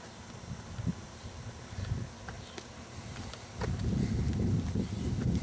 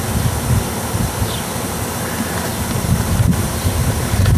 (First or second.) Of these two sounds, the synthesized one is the second